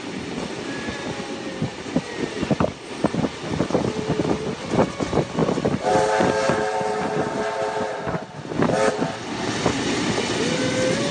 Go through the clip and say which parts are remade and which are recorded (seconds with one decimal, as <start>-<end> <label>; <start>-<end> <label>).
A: 0.0-11.1 recorded